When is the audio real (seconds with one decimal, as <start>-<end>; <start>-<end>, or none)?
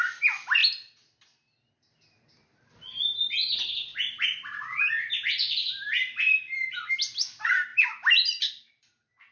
0.0-3.9; 6.9-9.3